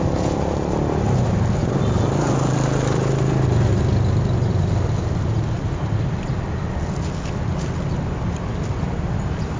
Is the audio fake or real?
real